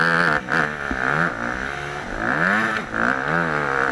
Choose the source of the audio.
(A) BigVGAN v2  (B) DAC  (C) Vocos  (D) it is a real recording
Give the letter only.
D